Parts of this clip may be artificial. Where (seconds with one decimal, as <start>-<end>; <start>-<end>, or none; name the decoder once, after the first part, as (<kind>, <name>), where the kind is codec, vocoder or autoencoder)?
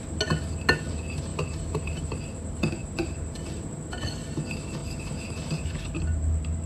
1.3-2.0 (vocoder, BigVGAN v2); 2.8-3.5; 4.8-6.0